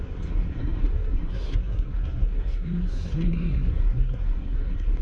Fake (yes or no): yes